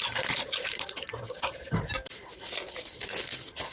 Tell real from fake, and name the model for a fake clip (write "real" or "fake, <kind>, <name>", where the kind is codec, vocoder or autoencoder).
real